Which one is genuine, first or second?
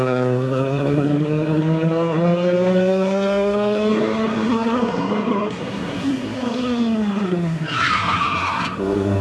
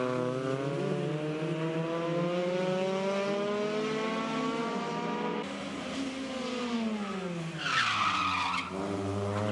second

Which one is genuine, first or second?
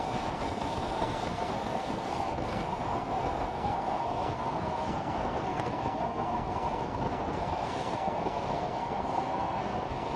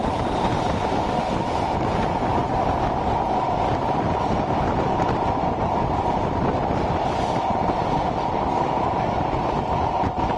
second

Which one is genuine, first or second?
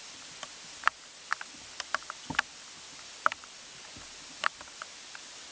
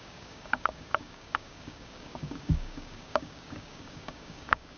first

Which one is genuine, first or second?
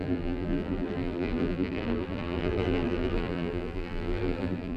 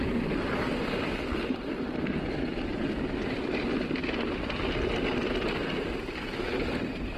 second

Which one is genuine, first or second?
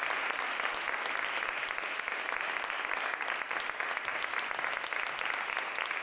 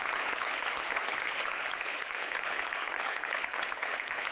first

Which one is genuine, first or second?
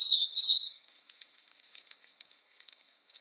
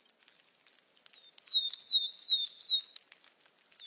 second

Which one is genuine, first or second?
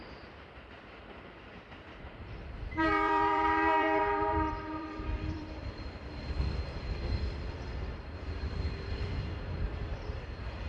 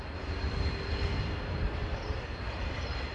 second